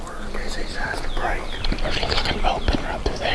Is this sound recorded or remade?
recorded